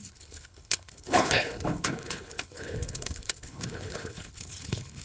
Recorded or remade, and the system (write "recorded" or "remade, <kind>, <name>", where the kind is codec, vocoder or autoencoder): remade, codec, HILCodec